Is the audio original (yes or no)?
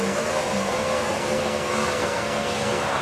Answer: no